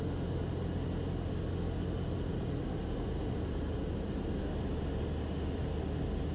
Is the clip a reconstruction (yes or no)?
no